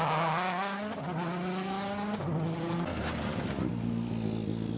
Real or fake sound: real